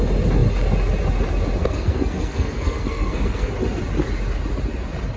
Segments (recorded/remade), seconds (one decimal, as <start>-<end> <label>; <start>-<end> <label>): 0.0-1.6 recorded; 1.6-3.5 remade; 3.5-5.2 recorded